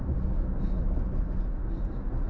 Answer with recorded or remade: recorded